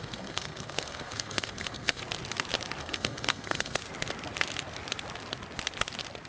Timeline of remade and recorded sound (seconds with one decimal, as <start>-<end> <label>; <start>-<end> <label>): 0.0-2.0 remade; 2.0-2.8 recorded; 2.8-3.8 remade; 3.8-6.3 recorded